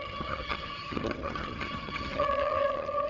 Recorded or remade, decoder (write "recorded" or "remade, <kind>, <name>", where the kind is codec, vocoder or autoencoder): remade, vocoder, HiFi-GAN